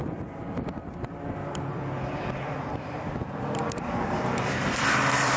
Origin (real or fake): fake